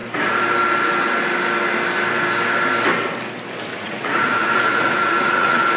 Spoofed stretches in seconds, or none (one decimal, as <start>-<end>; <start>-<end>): 3.7-5.8